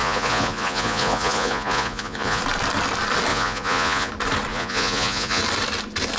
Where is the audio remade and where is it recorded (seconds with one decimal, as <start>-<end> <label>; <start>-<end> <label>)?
0.0-2.4 remade; 2.4-3.3 recorded; 3.3-4.1 remade; 4.1-4.5 recorded; 4.5-5.4 remade; 5.4-6.2 recorded